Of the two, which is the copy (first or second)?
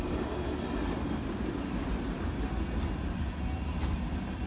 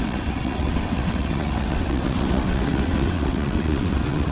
second